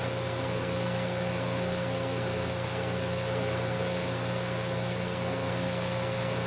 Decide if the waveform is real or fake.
fake